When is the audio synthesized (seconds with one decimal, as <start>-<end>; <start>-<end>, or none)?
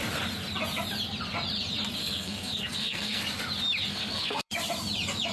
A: 2.0-3.2; 3.9-4.5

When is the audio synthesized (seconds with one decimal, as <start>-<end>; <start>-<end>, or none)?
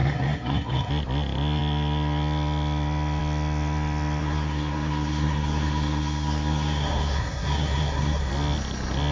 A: 0.0-0.9; 4.2-8.3